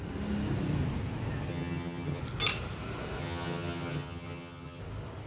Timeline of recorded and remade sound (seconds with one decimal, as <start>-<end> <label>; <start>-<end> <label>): 0.0-1.5 recorded; 1.5-2.2 remade; 2.2-3.2 recorded; 3.2-4.8 remade; 4.8-5.3 recorded

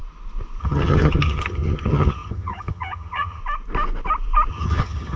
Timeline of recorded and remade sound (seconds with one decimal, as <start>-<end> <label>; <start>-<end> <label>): 0.0-0.6 recorded; 0.6-3.4 remade; 3.4-4.5 recorded; 4.5-5.2 remade

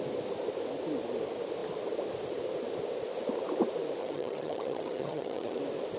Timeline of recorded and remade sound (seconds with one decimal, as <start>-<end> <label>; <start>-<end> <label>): 0.0-4.0 recorded; 4.0-5.6 remade; 5.6-6.0 recorded